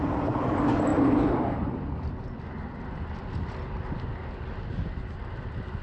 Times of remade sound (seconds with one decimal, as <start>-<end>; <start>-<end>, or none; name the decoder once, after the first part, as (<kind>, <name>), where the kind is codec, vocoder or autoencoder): none